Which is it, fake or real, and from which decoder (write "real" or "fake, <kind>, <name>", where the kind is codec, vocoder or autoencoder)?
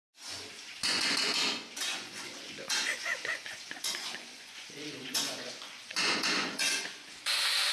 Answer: fake, vocoder, Vocos